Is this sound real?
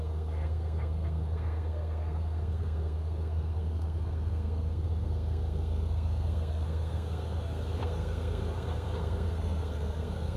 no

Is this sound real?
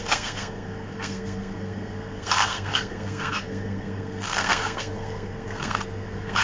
no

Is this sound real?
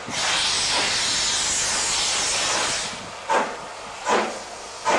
yes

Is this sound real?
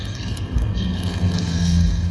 no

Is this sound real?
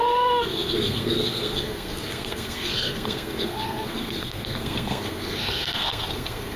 no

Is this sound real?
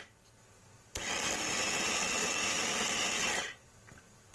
yes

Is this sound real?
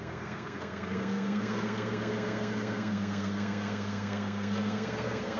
no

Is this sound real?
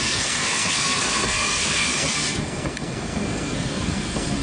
no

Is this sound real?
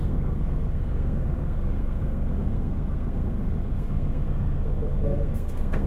no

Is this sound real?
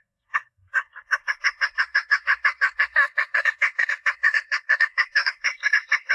no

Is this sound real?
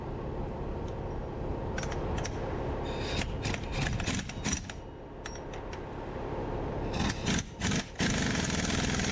yes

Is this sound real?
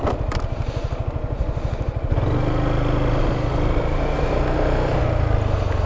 yes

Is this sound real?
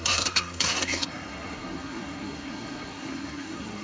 no